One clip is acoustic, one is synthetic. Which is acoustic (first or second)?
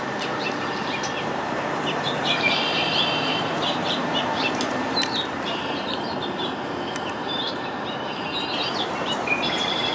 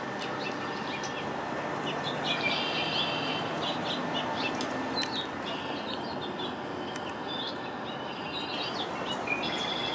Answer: second